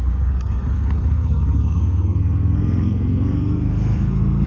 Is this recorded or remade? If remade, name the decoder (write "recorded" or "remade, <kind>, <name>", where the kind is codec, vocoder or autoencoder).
remade, codec, SNAC